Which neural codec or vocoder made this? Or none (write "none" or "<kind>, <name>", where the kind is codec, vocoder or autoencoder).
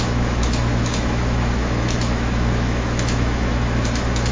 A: autoencoder, DAC-VAE